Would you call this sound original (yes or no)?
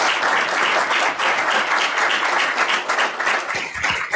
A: yes